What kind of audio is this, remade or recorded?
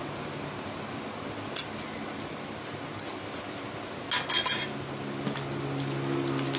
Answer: recorded